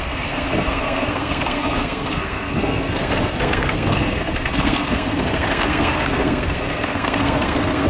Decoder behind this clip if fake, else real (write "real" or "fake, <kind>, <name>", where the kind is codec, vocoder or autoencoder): fake, codec, SNAC